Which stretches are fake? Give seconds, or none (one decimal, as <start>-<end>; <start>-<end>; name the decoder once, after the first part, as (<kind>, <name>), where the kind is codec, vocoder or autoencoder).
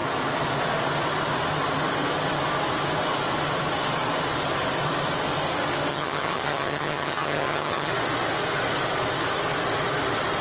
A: 5.9-7.9 (vocoder, HiFi-GAN)